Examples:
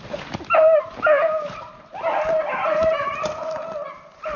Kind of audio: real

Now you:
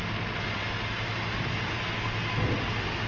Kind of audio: real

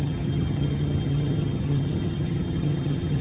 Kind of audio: fake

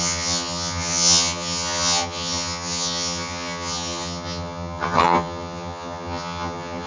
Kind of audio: fake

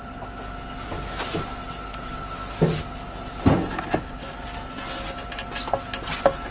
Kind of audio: real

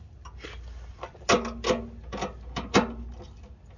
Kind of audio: real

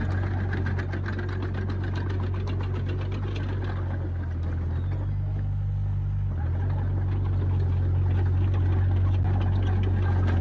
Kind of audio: real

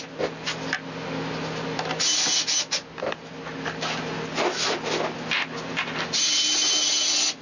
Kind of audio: real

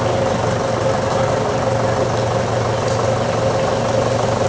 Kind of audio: real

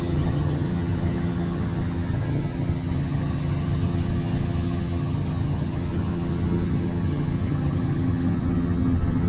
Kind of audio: fake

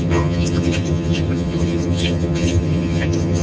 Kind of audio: fake